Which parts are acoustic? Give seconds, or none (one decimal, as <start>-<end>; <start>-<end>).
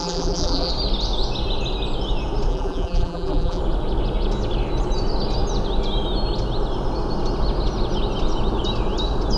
0.7-2.5; 3.6-9.4